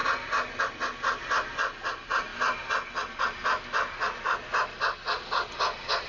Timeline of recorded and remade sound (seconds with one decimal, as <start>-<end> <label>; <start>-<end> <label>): 0.0-6.1 recorded